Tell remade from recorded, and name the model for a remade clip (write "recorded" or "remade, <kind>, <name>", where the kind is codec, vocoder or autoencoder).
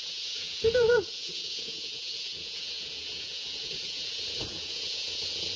remade, vocoder, Vocos